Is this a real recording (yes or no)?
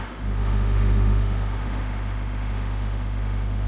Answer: no